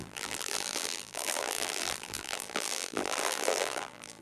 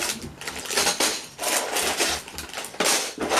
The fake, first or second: first